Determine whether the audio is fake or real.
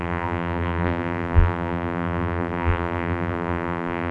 fake